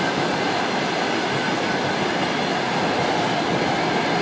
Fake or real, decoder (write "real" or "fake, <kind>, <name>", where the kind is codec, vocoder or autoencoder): real